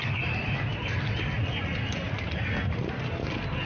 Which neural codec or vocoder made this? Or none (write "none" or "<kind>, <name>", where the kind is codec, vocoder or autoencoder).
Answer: none